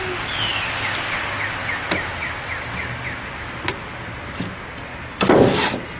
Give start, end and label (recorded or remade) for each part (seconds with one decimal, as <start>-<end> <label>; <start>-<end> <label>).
0.0-6.0 recorded